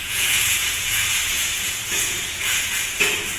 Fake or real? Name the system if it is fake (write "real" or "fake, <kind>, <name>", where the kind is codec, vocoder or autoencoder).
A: fake, vocoder, Vocos